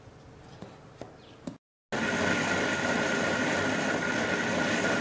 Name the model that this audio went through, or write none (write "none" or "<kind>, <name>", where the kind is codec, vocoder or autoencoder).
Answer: none